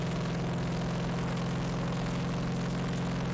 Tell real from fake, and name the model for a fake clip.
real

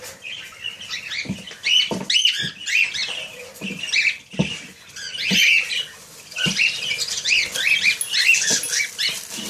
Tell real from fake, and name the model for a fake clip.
real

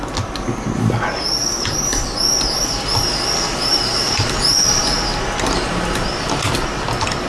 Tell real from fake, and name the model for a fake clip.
real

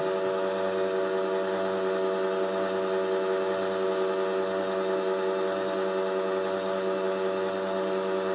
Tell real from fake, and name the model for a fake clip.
real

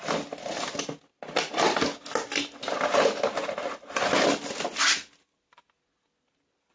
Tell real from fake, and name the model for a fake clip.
real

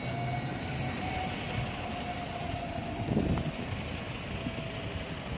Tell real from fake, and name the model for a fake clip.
real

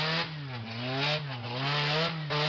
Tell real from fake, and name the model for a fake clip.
real